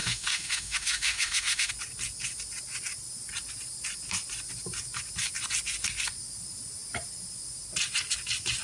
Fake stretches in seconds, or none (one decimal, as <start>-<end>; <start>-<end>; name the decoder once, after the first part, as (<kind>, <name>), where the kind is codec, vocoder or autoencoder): 0.0-1.7 (autoencoder, DAC-VAE)